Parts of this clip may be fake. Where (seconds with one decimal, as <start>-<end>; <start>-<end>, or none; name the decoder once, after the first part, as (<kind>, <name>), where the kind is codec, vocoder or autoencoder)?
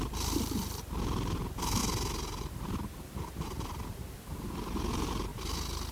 0.0-1.8 (vocoder, BigVGAN v2); 2.5-5.3